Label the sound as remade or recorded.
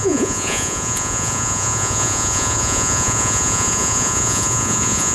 remade